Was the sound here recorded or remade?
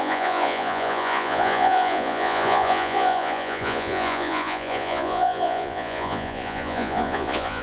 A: remade